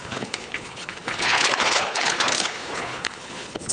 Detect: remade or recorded remade